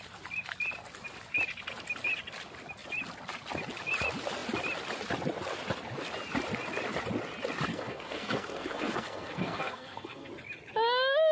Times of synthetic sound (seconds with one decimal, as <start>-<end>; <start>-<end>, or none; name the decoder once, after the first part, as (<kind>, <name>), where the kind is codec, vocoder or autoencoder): 7.7-10.3 (codec, SNAC)